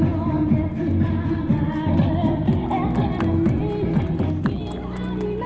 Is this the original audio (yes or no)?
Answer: yes